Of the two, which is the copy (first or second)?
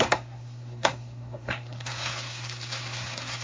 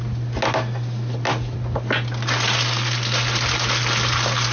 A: first